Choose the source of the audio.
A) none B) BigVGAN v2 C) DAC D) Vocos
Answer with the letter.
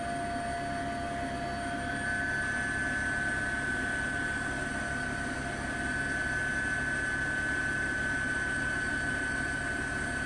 A